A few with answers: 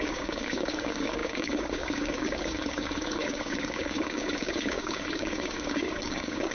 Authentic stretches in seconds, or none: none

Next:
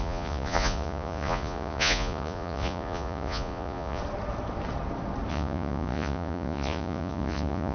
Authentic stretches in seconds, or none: 4.0-5.3

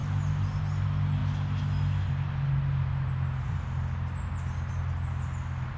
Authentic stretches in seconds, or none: 0.0-5.8